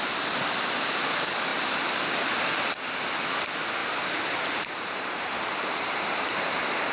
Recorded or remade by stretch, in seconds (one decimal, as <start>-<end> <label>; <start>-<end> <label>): 0.0-3.8 recorded; 3.8-6.9 remade